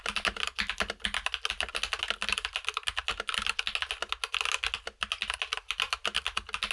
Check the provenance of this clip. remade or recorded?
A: recorded